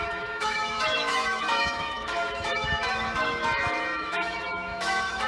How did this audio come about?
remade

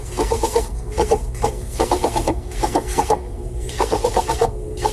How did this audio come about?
remade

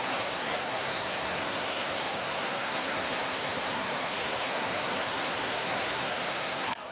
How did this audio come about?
remade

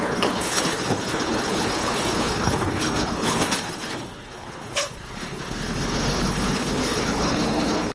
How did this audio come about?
remade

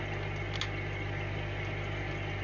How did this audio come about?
recorded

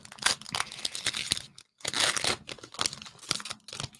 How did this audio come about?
recorded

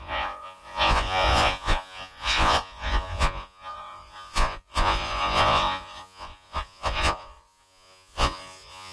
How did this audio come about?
remade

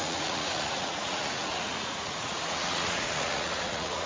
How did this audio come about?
remade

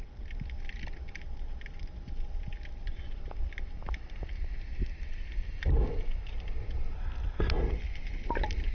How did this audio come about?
recorded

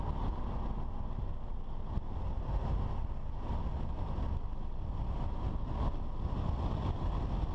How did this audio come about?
recorded